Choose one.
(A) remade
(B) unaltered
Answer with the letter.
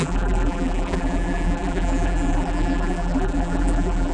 A